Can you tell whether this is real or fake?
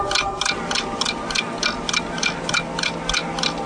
real